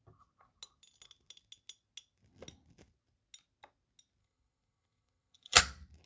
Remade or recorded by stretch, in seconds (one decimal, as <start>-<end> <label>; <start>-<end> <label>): 0.0-4.2 recorded; 4.2-5.6 remade; 5.6-6.1 recorded